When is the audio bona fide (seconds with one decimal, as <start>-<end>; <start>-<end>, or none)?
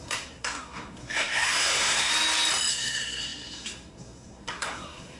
2.1-2.7